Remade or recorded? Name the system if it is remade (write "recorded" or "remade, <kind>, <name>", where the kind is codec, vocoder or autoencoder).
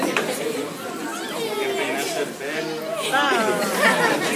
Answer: recorded